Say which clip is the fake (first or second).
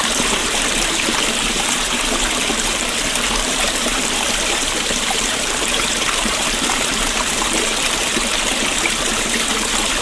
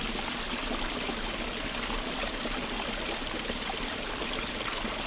first